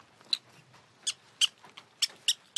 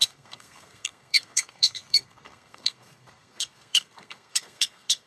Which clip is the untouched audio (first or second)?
first